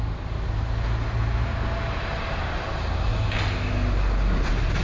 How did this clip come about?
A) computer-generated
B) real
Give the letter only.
B